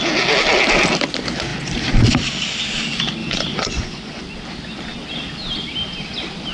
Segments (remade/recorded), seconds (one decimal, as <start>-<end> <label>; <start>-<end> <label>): 0.0-3.2 recorded; 3.2-4.2 remade; 4.2-6.5 recorded